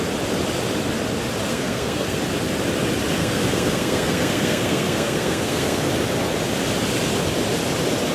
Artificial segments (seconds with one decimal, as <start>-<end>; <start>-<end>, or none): 1.5-2.2; 3.2-5.9